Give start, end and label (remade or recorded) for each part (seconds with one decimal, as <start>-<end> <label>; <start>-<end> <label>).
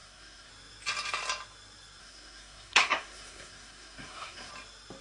0.0-0.5 remade; 0.5-2.0 recorded; 2.0-4.5 remade; 4.5-5.0 recorded